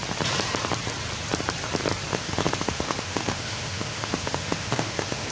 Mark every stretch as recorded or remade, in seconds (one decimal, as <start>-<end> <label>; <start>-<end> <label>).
0.0-2.1 recorded; 2.1-5.3 remade